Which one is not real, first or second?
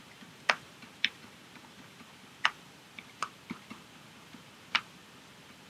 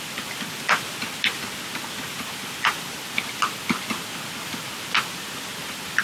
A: first